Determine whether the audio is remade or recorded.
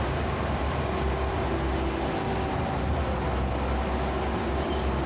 recorded